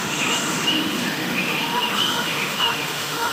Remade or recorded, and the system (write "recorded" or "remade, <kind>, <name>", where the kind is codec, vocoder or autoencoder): remade, autoencoder, DAC-VAE